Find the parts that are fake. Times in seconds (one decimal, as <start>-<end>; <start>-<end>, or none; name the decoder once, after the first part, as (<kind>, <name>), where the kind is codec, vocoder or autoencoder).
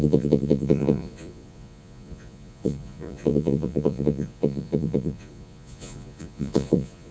0.0-7.1 (vocoder, Vocos)